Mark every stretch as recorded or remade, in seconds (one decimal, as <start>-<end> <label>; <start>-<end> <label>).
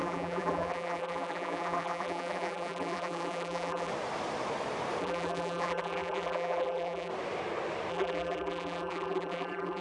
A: 0.0-3.9 remade; 3.9-5.0 recorded; 5.0-7.1 remade; 7.1-7.9 recorded; 7.9-9.8 remade